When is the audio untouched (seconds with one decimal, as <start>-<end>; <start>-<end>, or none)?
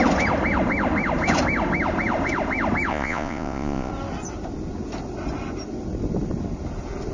0.0-2.9; 3.9-7.1